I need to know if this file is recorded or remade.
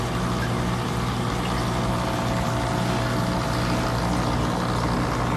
recorded